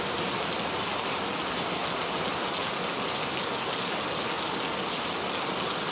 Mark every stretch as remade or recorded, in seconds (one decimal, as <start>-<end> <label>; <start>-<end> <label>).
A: 0.0-5.9 recorded